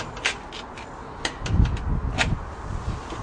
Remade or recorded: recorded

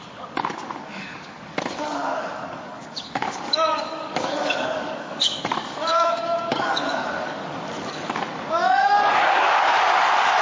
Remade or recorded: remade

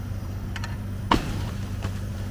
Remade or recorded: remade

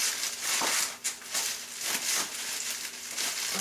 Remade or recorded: recorded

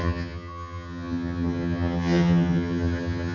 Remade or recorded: remade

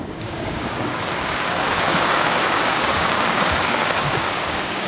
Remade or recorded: remade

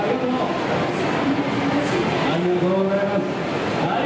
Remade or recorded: recorded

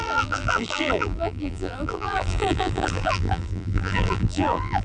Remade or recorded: remade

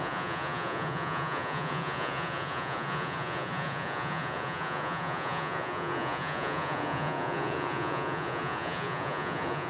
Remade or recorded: remade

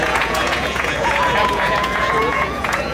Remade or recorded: remade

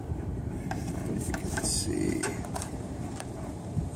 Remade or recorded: remade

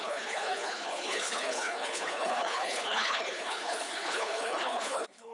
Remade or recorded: remade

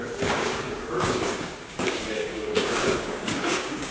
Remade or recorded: remade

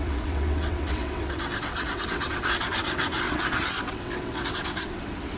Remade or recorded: remade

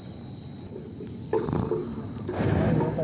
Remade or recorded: recorded